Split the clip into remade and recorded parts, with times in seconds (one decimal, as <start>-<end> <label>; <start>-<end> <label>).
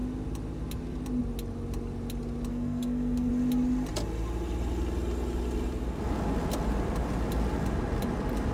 0.0-2.5 recorded; 2.5-3.3 remade; 3.3-8.5 recorded